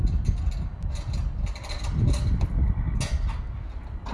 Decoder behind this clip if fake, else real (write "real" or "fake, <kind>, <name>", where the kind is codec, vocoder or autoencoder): real